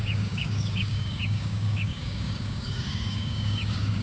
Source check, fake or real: fake